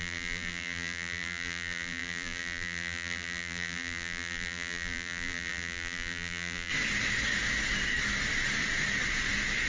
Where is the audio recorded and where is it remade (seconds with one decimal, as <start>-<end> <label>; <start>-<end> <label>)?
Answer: 0.0-6.7 remade; 6.7-9.7 recorded

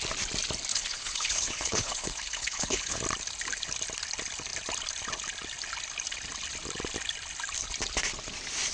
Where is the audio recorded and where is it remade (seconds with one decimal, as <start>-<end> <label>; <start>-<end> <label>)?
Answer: 0.0-0.7 recorded; 0.7-3.0 remade; 3.0-8.7 recorded

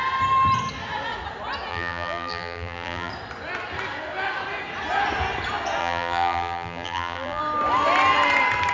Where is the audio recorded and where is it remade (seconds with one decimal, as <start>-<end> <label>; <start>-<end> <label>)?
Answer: 0.0-1.7 recorded; 1.7-3.1 remade; 3.1-5.8 recorded; 5.8-7.4 remade; 7.4-8.7 recorded

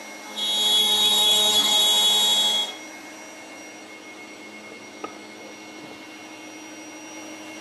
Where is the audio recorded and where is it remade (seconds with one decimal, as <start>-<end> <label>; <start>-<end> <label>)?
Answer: 0.0-0.8 recorded; 0.8-1.8 remade; 1.8-7.6 recorded